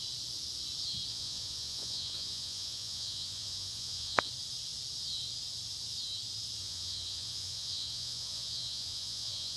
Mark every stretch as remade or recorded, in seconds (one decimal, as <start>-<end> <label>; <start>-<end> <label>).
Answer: 0.0-1.1 recorded; 1.1-4.3 remade; 4.3-6.6 recorded; 6.6-9.6 remade